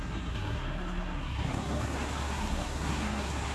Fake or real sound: fake